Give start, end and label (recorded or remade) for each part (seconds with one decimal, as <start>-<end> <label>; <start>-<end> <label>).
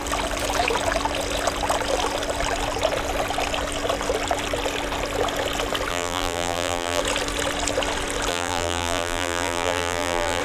0.0-5.9 recorded; 5.9-7.0 remade; 7.0-8.3 recorded; 8.3-10.4 remade